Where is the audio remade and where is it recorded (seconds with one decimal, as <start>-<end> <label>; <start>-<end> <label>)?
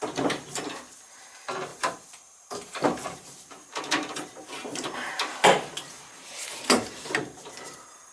0.0-1.7 recorded; 1.7-5.1 remade; 5.1-8.1 recorded